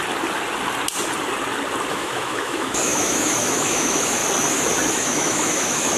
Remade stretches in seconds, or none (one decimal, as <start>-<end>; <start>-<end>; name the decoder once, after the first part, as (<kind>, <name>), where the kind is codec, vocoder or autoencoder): 1.9-4.2 (autoencoder, DAC-VAE); 4.9-6.0